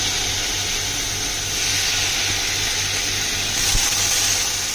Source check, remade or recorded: recorded